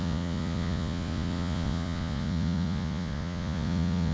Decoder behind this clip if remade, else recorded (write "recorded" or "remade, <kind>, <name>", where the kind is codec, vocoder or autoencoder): remade, vocoder, Vocos